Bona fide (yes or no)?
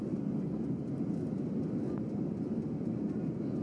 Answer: yes